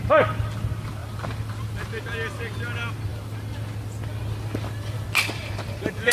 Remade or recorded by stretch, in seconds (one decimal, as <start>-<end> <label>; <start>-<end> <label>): 0.0-6.1 recorded